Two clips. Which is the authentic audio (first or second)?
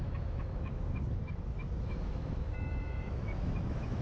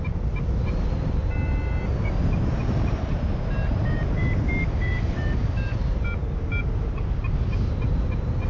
second